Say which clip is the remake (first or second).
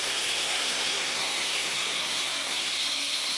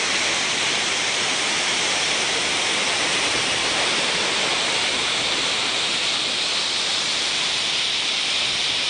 first